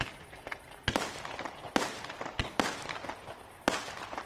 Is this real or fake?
real